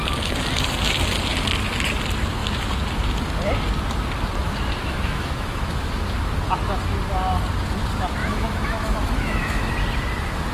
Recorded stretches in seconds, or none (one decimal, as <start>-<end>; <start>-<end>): 0.0-4.8; 6.0-8.2; 9.7-10.5